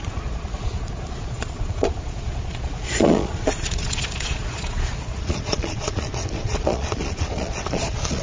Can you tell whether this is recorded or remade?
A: remade